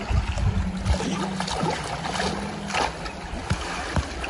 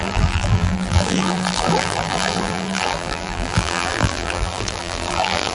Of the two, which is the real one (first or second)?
first